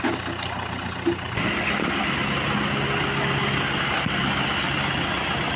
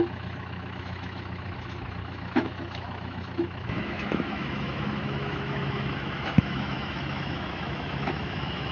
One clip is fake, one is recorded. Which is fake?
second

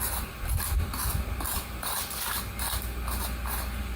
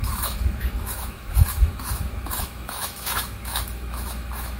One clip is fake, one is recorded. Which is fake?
second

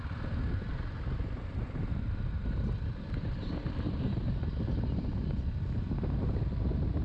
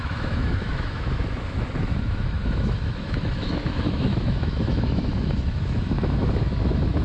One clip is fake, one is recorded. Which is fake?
second